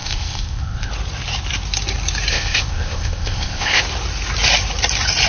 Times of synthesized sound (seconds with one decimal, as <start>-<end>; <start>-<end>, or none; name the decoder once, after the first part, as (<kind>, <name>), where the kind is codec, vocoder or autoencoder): 0.0-0.9 (codec, ZipCodec); 2.3-3.8